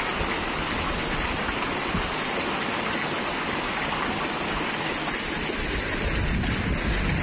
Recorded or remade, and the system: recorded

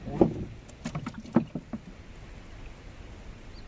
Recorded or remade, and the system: recorded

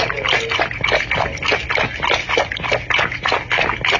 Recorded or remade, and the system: recorded